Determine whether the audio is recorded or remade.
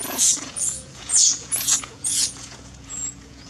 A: remade